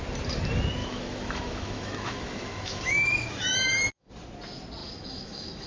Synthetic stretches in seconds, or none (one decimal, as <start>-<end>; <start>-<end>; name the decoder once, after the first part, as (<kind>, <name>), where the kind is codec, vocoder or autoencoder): 0.8-4.1 (autoencoder, DAC-VAE); 4.8-5.7